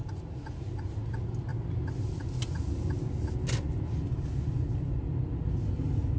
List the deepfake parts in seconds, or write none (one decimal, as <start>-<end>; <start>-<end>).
none